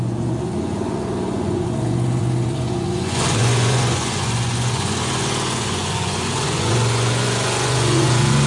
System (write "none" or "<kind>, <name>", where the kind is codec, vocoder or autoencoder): vocoder, Vocos